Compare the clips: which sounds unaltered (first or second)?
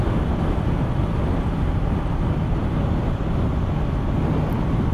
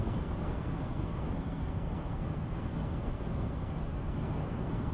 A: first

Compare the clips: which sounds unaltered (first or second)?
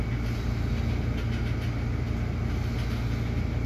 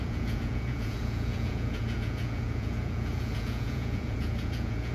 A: first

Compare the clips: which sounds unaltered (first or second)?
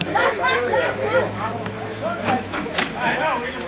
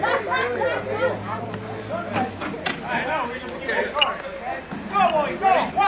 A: second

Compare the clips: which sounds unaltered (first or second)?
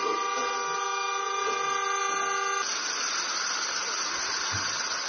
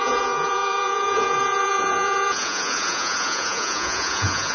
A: first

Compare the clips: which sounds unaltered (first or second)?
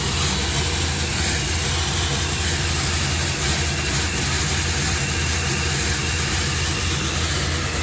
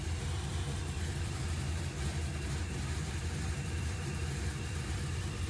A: first